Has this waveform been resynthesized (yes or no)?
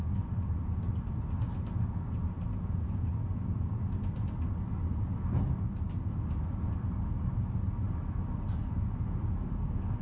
no